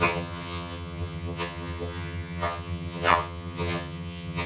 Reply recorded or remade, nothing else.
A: remade